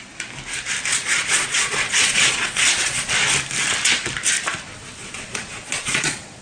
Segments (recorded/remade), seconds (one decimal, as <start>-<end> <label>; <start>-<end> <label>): 0.0-0.9 recorded; 0.9-3.1 remade; 3.1-5.0 recorded; 5.0-6.4 remade